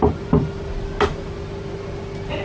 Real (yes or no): yes